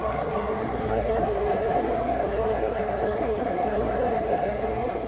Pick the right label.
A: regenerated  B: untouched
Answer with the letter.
A